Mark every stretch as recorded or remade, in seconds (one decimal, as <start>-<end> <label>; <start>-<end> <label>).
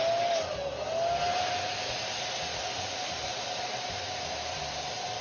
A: 0.0-1.3 recorded; 1.3-2.1 remade; 2.1-2.5 recorded; 2.5-4.6 remade; 4.6-5.2 recorded